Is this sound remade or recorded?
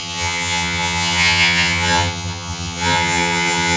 remade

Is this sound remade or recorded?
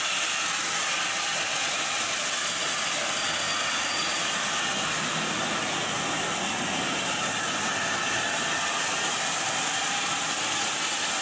recorded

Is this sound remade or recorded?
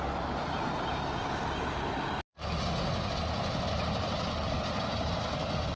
recorded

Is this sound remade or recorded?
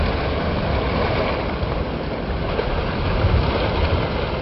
recorded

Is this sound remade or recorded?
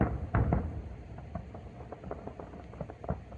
recorded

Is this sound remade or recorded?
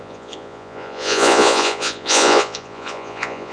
remade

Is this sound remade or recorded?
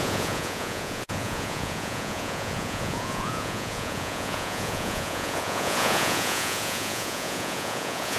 remade